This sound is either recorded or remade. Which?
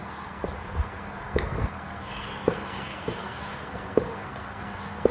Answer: remade